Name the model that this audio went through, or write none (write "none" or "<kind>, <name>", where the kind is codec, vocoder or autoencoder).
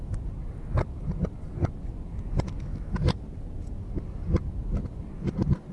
none